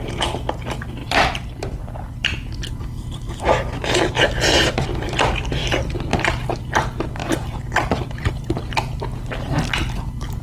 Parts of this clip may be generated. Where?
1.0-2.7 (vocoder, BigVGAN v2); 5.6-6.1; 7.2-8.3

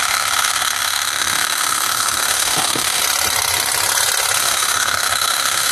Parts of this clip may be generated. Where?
0.0-3.0 (autoencoder, DAC-VAE); 4.4-5.7

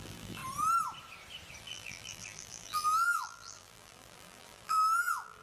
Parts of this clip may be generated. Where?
0.0-0.4 (vocoder, BigVGAN v2); 1.6-5.4

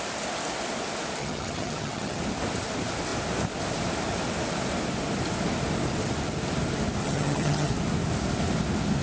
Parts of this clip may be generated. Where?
1.2-2.2 (vocoder, HiFi-GAN); 7.0-7.7

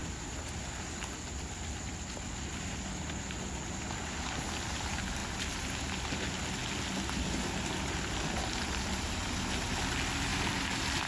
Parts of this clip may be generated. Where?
none

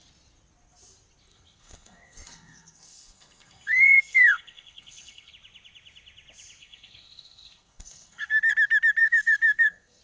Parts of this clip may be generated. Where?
1.3-5.3 (codec, SNAC); 6.6-8.4; 9.0-10.0

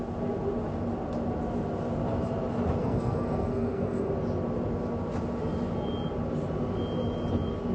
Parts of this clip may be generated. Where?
2.8-4.1 (codec, SNAC)

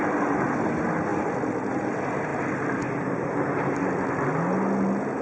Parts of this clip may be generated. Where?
none